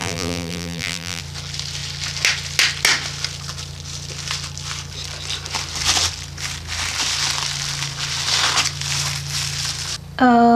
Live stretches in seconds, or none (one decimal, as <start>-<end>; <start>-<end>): 1.2-10.6